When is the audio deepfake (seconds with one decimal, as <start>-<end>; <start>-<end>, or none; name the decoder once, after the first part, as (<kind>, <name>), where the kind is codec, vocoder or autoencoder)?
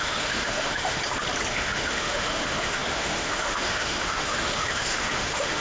0.0-1.0 (autoencoder, DAC-VAE); 1.5-5.6